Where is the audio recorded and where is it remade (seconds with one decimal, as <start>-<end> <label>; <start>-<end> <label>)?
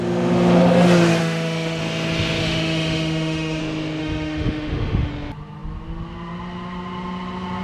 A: 0.0-1.2 recorded; 1.2-1.8 remade; 1.8-2.4 recorded; 2.4-3.6 remade; 3.6-4.0 recorded; 4.0-5.1 remade; 5.1-7.6 recorded